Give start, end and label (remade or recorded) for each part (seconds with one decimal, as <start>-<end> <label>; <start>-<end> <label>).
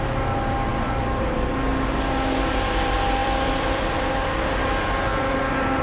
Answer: 0.0-3.2 recorded; 3.2-4.1 remade; 4.1-5.8 recorded